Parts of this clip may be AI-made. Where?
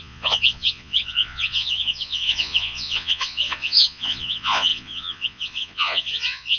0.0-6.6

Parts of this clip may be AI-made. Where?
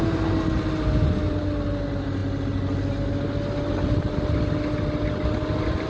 none